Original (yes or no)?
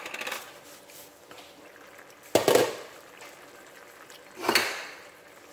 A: yes